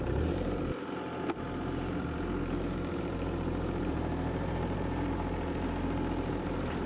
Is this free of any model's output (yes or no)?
no